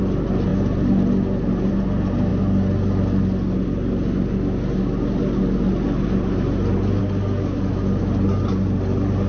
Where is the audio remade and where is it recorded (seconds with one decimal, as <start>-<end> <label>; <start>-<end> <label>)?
0.0-9.3 recorded